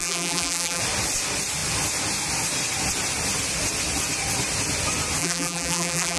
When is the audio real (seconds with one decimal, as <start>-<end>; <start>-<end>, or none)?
0.8-5.2